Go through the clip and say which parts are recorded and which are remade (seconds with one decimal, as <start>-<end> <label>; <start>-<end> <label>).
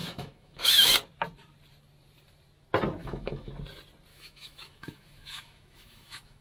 0.0-0.9 remade; 0.9-3.0 recorded; 3.0-3.5 remade; 3.5-4.1 recorded; 4.1-6.4 remade